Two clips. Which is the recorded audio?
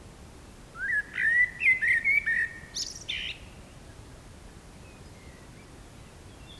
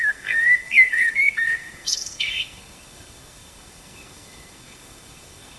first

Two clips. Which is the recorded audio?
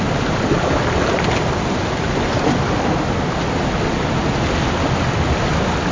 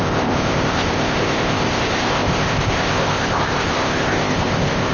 first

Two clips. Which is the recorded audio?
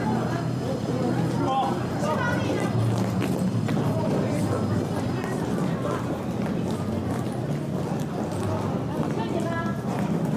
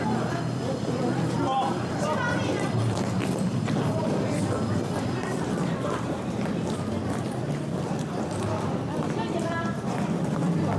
first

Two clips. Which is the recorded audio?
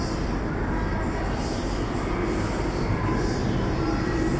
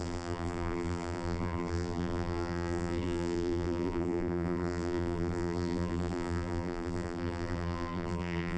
first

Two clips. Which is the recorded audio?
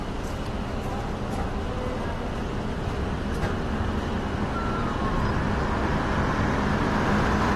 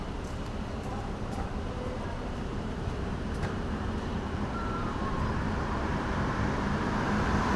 first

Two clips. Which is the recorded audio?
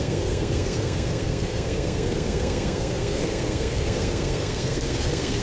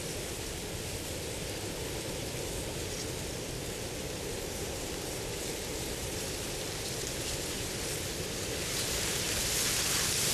second